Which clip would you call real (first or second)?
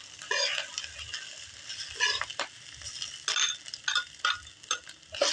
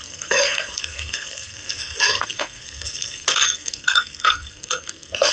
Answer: first